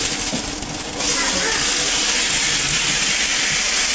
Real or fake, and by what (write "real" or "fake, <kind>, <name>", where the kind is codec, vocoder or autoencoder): real